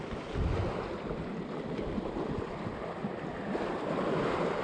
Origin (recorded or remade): recorded